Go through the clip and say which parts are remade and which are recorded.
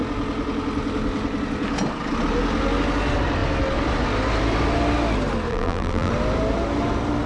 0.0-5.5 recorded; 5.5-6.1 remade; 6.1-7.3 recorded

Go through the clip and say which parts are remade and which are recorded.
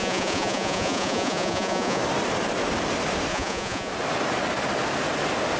0.0-2.0 remade; 2.0-3.3 recorded; 3.3-3.9 remade; 3.9-5.6 recorded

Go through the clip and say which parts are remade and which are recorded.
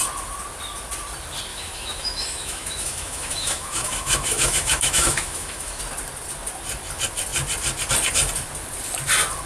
0.0-1.5 recorded; 1.5-5.8 remade; 5.8-9.5 recorded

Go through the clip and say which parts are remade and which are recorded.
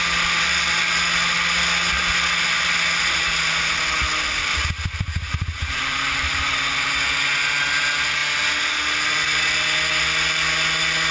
0.0-4.5 recorded; 4.5-6.4 remade; 6.4-11.1 recorded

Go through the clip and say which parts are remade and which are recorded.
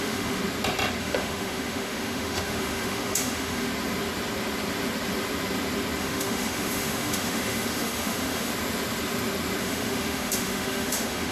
0.0-0.4 remade; 0.4-1.0 recorded; 1.0-3.7 remade; 3.7-6.0 recorded; 6.0-8.5 remade; 8.5-9.6 recorded; 9.6-11.3 remade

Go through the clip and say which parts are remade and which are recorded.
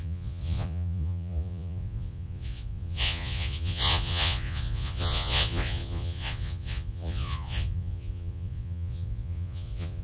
0.0-10.0 remade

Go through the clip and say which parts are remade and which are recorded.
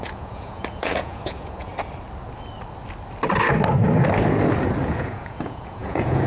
0.0-1.7 remade; 1.7-4.8 recorded; 4.8-6.3 remade